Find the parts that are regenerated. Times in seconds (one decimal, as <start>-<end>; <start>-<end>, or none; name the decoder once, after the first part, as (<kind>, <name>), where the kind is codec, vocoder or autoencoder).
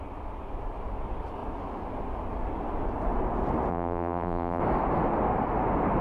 3.7-4.6 (vocoder, BigVGAN v2)